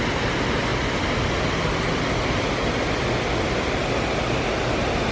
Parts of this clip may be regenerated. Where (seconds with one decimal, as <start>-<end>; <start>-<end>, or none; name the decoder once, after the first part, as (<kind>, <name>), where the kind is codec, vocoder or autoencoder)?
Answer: none